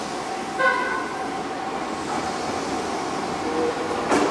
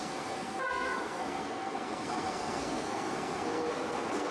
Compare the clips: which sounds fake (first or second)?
second